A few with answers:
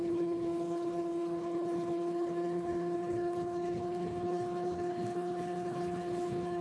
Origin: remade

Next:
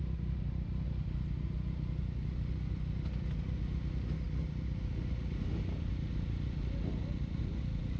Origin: recorded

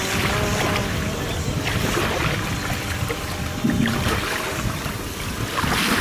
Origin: recorded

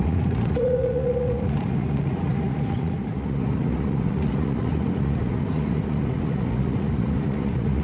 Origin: remade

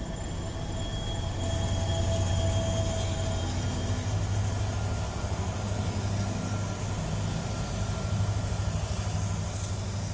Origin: recorded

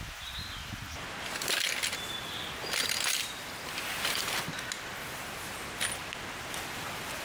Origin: recorded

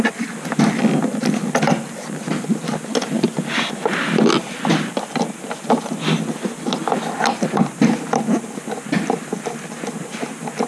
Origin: recorded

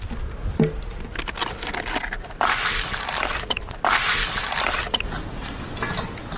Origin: recorded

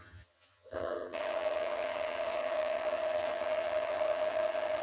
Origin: remade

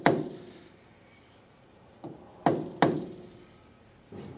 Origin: recorded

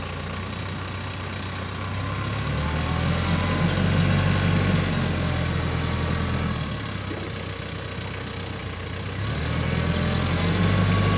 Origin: recorded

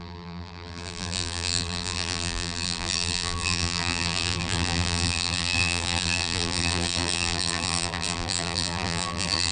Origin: remade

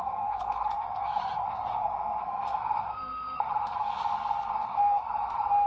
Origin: remade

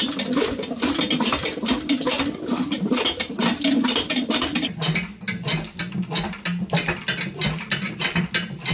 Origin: recorded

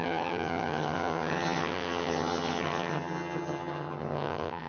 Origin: remade